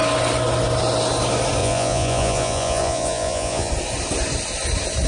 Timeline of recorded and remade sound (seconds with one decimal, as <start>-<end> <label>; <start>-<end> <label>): 0.0-1.6 recorded; 1.6-3.7 remade; 3.7-5.1 recorded